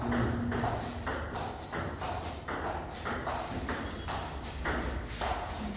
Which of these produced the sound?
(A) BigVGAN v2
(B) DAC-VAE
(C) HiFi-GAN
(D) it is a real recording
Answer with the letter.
D